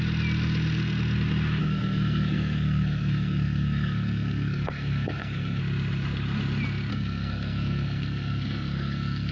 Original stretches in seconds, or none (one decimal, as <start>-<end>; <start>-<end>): 0.0-1.6; 5.6-6.9